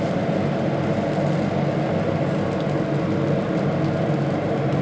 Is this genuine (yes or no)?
yes